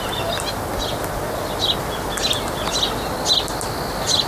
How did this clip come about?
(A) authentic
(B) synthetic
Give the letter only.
A